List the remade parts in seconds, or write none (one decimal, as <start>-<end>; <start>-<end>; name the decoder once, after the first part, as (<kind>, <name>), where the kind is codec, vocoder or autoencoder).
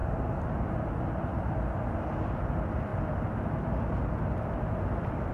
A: none